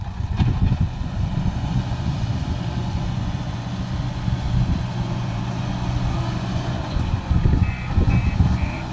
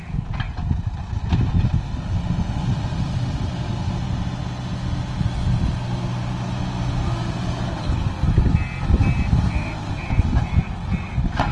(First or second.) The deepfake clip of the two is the first